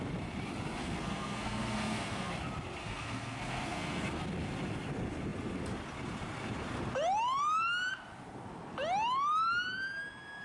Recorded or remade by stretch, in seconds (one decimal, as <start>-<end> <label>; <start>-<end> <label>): 0.0-0.8 recorded; 0.8-2.3 remade; 2.3-2.8 recorded; 2.8-4.2 remade; 4.2-10.4 recorded